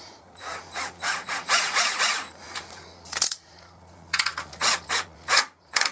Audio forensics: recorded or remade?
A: remade